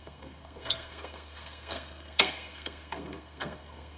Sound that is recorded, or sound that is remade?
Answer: remade